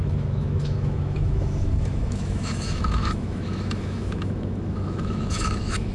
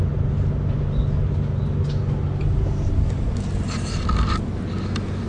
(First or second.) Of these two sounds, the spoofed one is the first